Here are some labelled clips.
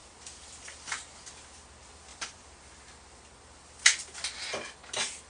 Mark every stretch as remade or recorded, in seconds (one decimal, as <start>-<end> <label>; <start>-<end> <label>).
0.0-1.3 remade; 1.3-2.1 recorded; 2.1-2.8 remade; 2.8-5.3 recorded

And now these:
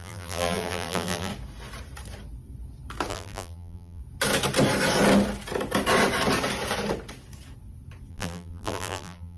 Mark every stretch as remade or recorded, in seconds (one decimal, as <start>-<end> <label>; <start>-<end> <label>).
0.0-1.3 remade; 1.3-3.1 recorded; 3.1-4.0 remade; 4.0-8.1 recorded; 8.1-9.4 remade

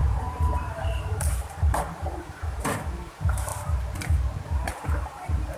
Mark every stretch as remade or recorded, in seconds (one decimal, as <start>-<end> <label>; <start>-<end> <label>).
0.0-3.5 remade; 3.5-4.7 recorded; 4.7-5.6 remade